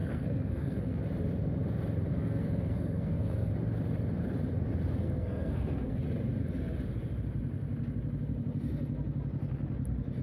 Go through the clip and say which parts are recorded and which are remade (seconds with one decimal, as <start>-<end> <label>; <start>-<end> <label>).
0.0-1.0 remade; 1.0-2.1 recorded; 2.1-3.5 remade; 3.5-5.0 recorded; 5.0-6.0 remade; 6.0-10.2 recorded